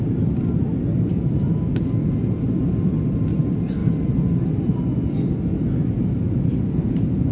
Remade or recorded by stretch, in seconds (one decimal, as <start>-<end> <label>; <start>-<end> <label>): 0.0-2.0 recorded; 2.0-3.4 remade; 3.4-7.3 recorded